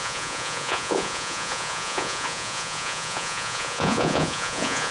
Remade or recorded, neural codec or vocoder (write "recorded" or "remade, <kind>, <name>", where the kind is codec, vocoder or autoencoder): remade, vocoder, Vocos